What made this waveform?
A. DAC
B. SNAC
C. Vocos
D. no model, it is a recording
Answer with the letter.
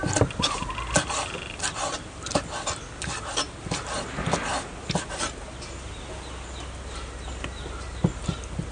D